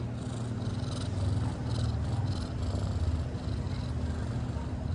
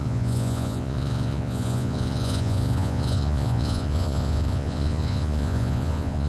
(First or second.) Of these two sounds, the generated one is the second